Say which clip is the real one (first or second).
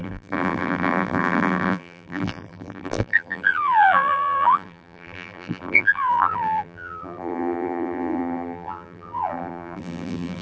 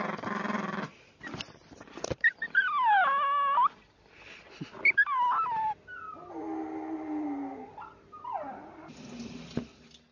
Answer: second